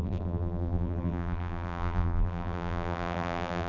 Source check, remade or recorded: remade